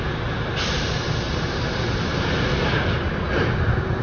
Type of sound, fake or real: real